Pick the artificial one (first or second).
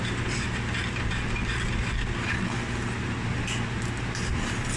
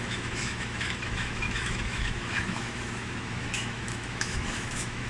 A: second